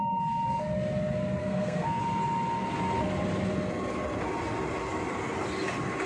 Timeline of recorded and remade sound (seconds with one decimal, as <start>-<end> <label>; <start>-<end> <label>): 0.0-1.4 recorded; 1.4-2.0 remade; 2.0-6.1 recorded